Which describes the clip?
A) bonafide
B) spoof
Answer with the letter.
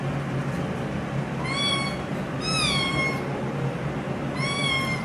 A